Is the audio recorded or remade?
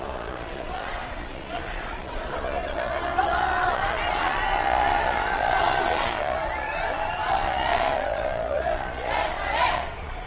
remade